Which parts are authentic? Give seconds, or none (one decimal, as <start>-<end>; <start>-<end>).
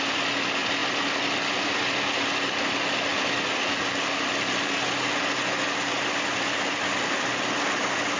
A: 0.0-8.2